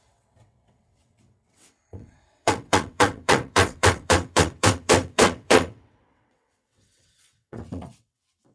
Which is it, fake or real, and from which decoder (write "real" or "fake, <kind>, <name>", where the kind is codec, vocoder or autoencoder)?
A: fake, vocoder, WaveNeXt